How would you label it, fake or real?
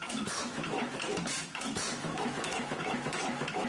fake